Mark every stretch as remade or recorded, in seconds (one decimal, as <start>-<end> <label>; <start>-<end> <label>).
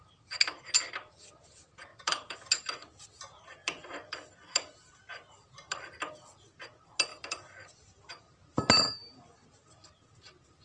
0.0-1.9 recorded; 1.9-2.5 remade; 2.5-3.6 recorded; 3.6-6.1 remade; 6.1-7.1 recorded; 7.1-9.3 remade; 9.3-10.6 recorded